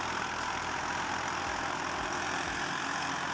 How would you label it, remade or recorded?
remade